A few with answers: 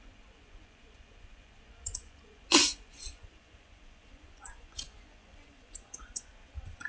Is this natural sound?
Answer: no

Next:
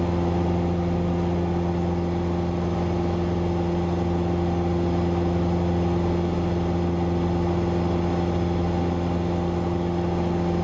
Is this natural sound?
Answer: yes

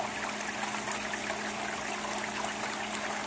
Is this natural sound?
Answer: yes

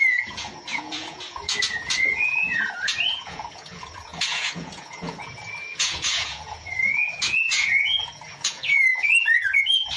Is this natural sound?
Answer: no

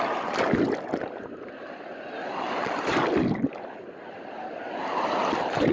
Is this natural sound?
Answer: yes